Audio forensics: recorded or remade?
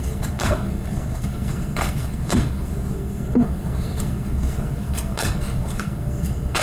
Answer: remade